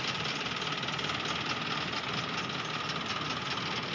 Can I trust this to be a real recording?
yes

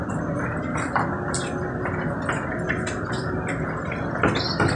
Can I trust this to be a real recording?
yes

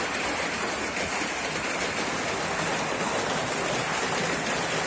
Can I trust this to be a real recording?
yes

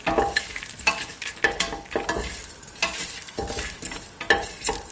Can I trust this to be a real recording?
yes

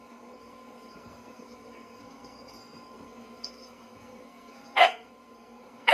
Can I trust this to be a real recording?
no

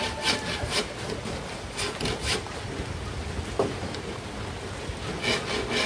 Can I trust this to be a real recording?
yes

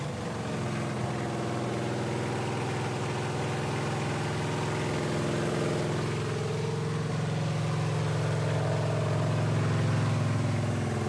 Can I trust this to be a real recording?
yes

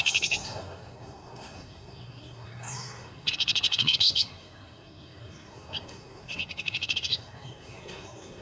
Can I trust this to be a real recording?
no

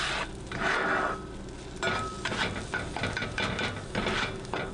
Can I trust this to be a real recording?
yes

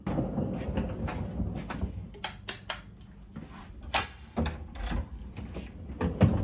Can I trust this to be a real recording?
yes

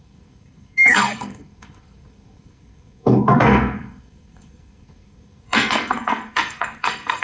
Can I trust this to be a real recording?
no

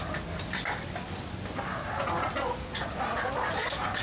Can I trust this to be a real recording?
yes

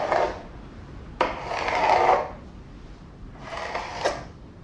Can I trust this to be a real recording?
yes